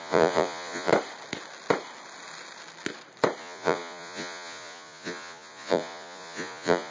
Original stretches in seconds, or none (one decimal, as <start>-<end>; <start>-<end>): 0.9-3.4